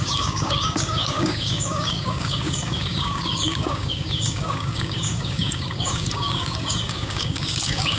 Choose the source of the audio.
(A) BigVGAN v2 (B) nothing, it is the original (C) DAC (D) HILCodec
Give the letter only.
C